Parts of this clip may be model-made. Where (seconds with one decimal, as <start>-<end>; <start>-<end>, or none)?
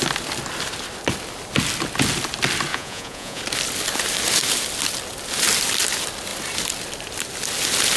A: 2.7-3.4